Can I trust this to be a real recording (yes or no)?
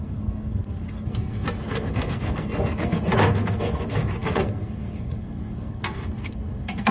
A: no